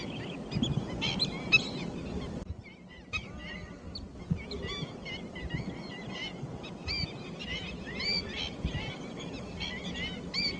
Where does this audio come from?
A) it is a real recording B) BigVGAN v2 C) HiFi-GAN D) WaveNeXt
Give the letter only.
A